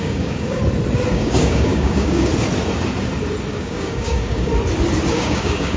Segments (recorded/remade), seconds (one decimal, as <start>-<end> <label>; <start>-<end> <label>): 0.0-0.6 remade; 0.6-1.1 recorded; 1.1-2.3 remade; 2.3-3.5 recorded; 3.5-4.5 remade; 4.5-5.1 recorded; 5.1-5.8 remade